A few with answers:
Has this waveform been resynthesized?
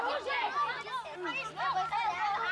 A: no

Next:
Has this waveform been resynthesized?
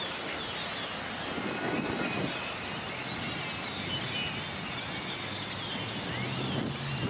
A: no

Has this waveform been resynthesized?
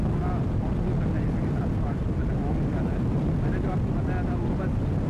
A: no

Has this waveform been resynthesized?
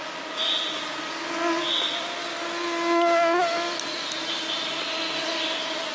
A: no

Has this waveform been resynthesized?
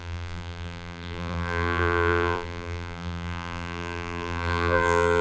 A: yes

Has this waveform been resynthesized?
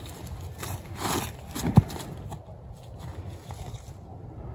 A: no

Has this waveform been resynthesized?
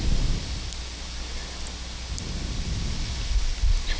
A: no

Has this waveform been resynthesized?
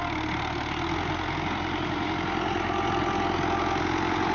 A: no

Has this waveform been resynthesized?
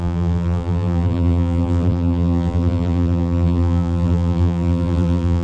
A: yes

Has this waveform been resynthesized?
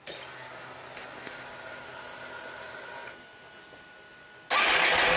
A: no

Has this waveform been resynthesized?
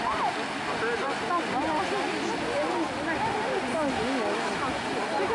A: no